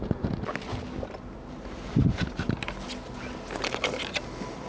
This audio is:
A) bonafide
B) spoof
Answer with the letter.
A